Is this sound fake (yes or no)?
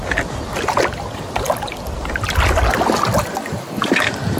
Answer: no